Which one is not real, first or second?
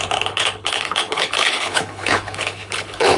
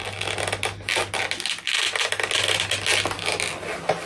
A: first